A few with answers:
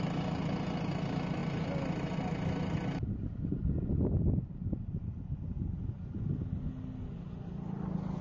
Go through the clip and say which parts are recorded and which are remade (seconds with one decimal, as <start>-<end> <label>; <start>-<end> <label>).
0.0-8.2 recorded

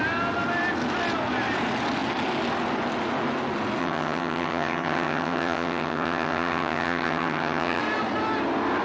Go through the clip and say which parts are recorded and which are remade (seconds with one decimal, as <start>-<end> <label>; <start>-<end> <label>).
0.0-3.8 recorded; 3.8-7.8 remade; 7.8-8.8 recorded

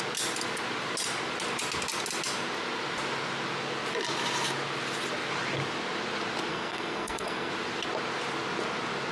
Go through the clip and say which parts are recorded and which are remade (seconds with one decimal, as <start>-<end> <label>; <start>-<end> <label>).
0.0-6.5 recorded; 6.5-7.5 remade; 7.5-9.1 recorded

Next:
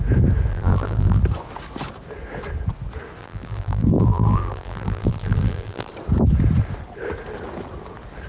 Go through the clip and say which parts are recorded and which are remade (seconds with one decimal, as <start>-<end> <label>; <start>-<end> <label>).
0.0-0.5 recorded; 0.5-1.2 remade; 1.2-3.2 recorded; 3.2-5.9 remade; 5.9-8.3 recorded

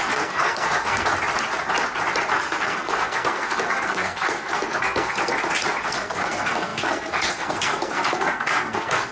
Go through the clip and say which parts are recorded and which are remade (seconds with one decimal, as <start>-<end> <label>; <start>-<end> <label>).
0.0-1.1 remade; 1.1-2.3 recorded; 2.3-5.3 remade; 5.3-5.8 recorded; 5.8-9.1 remade

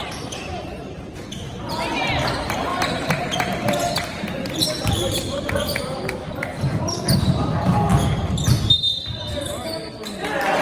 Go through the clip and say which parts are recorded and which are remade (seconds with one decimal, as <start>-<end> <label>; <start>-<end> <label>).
0.0-7.9 remade; 7.9-10.2 recorded; 10.2-10.6 remade